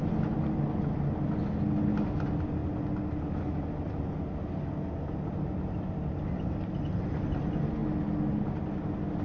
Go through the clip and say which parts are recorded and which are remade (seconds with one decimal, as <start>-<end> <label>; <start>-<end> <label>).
0.0-9.2 recorded